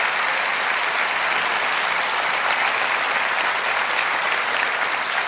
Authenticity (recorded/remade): recorded